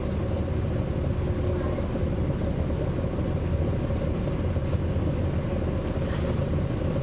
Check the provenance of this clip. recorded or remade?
recorded